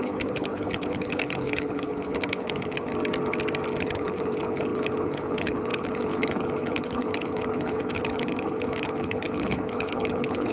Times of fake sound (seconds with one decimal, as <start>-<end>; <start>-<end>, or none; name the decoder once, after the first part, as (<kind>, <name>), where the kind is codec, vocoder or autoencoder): 0.0-2.9 (codec, HILCodec); 3.8-10.5